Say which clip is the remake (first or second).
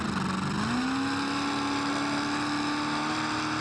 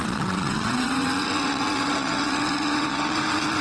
second